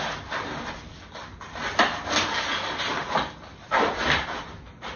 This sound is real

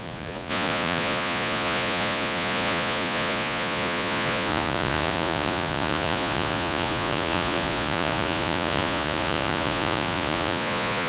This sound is fake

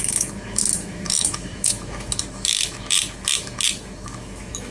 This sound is fake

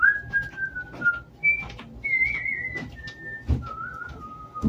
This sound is real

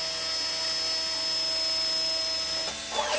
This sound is real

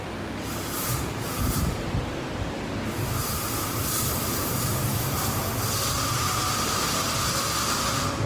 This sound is fake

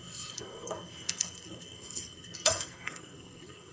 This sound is fake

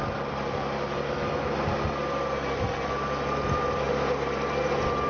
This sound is real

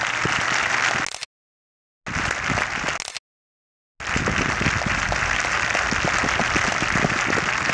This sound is real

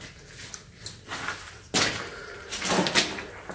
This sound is real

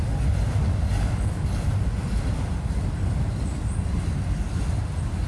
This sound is real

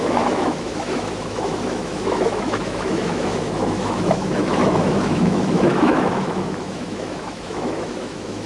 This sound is fake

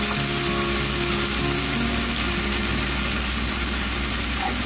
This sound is real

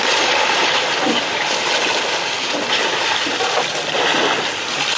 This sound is real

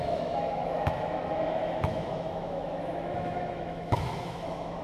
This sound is fake